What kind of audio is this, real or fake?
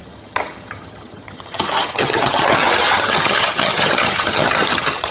fake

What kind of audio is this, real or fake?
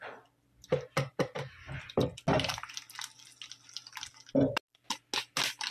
real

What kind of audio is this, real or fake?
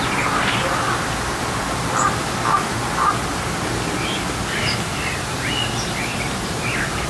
real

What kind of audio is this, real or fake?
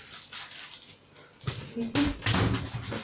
real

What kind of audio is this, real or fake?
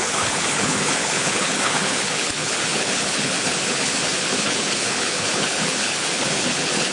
fake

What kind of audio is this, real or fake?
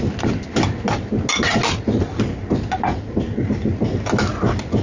real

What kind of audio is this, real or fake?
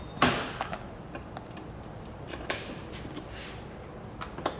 real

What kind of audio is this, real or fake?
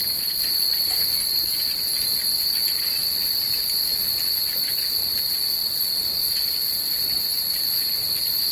fake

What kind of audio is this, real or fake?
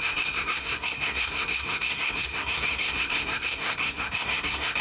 fake